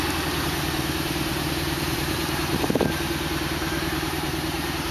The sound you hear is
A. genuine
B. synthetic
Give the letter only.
B